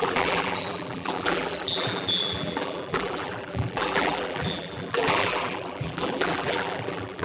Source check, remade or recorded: remade